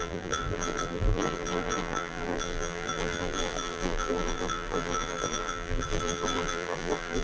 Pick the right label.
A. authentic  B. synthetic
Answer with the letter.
B